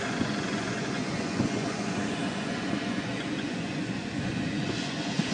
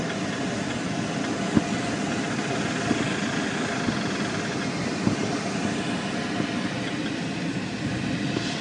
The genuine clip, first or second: second